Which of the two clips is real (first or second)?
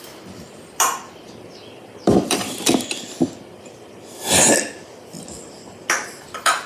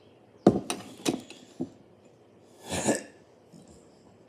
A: second